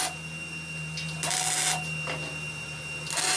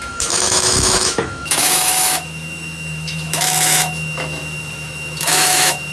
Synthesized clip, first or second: second